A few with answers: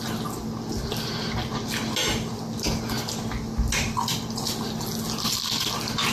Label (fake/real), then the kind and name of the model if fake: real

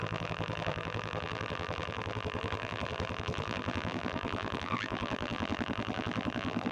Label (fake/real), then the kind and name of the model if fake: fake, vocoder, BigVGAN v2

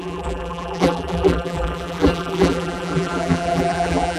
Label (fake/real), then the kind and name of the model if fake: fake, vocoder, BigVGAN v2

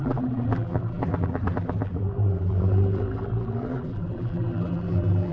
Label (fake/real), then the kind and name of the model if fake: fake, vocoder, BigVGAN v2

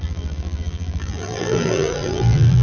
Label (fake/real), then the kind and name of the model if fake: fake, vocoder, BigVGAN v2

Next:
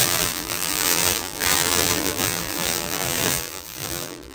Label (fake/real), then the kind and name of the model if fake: fake, vocoder, BigVGAN v2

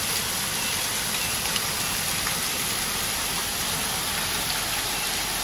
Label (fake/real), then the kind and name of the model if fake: real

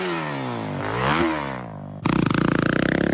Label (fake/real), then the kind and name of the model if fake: real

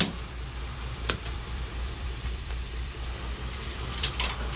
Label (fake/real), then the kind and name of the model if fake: fake, vocoder, BigVGAN v2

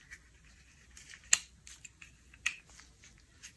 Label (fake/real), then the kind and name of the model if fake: real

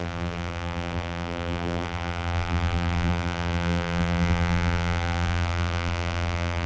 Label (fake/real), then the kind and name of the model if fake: fake, vocoder, BigVGAN v2